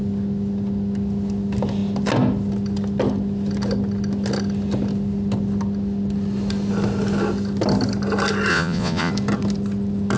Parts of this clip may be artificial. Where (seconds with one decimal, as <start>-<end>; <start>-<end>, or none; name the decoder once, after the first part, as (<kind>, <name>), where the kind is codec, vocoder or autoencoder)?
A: 8.5-9.1 (vocoder, Vocos)